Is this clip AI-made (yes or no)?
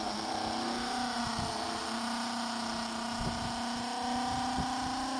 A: no